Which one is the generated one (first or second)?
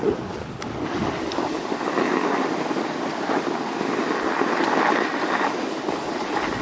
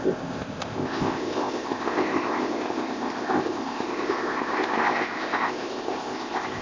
second